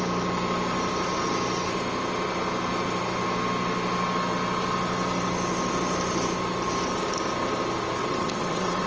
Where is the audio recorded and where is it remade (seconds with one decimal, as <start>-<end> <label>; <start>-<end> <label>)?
0.0-8.0 recorded; 8.0-8.9 remade